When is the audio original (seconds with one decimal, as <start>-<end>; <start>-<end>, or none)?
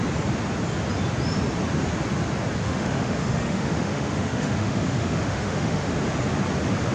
0.0-2.6; 6.0-6.9